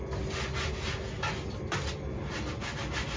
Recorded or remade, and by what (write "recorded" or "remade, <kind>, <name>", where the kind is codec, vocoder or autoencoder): recorded